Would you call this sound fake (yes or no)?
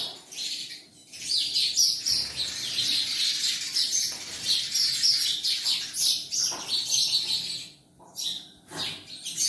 no